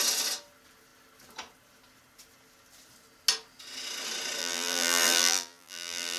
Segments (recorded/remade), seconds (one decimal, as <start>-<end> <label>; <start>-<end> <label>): 0.0-4.4 recorded; 4.4-6.2 remade

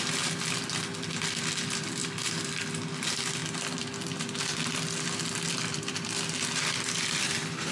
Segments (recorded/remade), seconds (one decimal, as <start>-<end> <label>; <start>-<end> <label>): 0.0-7.7 recorded